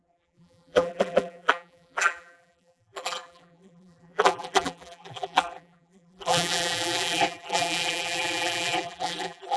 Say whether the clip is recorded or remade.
remade